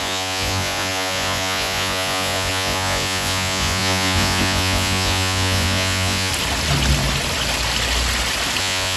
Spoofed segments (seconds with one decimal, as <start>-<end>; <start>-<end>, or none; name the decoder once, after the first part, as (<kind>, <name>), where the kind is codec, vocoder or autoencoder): 0.0-6.3 (vocoder, Vocos); 8.6-9.0